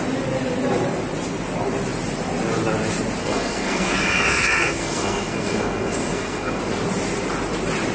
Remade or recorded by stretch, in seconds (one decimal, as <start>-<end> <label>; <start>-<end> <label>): 0.0-3.2 recorded; 3.2-6.6 remade; 6.6-7.9 recorded

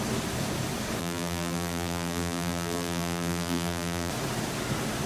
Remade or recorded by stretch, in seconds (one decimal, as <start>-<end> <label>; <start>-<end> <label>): 0.0-1.0 recorded; 1.0-4.1 remade; 4.1-5.1 recorded